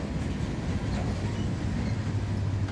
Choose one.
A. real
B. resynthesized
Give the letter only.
A